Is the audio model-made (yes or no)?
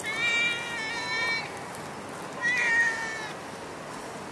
no